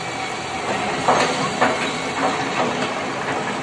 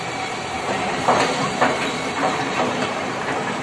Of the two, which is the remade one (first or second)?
second